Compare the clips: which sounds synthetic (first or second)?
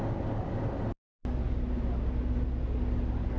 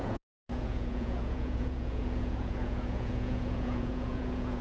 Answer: second